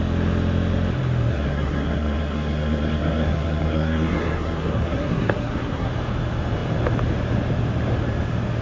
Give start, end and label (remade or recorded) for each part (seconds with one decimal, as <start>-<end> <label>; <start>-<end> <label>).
0.0-1.3 recorded; 1.3-5.9 remade; 5.9-8.6 recorded